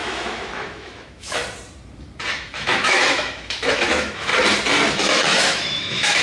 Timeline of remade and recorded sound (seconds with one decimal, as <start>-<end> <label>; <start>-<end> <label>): 0.0-1.4 remade; 1.4-2.3 recorded; 2.3-4.3 remade; 4.3-4.9 recorded; 4.9-6.2 remade